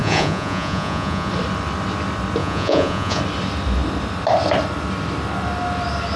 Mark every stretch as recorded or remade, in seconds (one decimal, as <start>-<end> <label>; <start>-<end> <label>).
0.0-1.3 remade; 1.3-2.4 recorded; 2.4-3.2 remade; 3.2-6.2 recorded